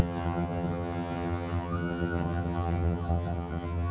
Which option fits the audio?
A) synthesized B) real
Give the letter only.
A